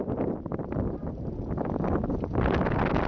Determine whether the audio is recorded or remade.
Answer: recorded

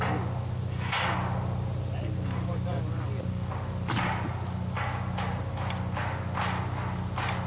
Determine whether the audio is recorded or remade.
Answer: recorded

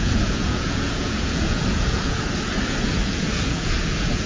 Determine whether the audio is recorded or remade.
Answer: remade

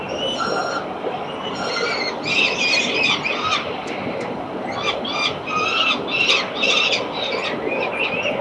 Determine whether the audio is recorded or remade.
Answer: recorded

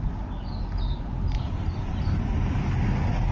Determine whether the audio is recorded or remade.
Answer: recorded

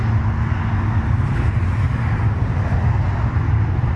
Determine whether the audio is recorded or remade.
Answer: recorded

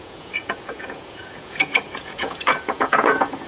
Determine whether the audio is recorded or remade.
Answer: remade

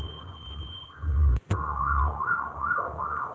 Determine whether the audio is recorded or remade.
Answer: remade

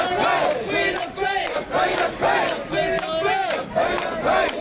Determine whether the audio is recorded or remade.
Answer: recorded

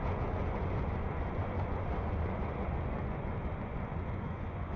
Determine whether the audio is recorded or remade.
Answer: remade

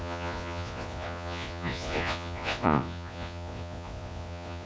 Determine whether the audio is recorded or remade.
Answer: remade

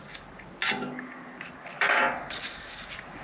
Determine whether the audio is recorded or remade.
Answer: recorded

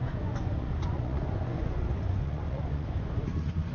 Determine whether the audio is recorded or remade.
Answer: remade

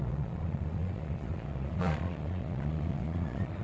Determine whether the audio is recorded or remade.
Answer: remade